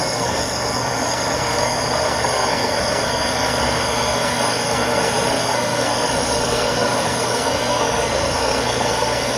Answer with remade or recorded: remade